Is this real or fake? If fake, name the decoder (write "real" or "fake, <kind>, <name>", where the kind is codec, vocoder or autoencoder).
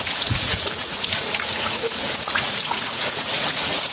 fake, vocoder, Vocos